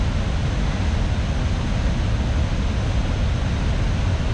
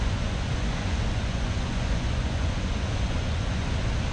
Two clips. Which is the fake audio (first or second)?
second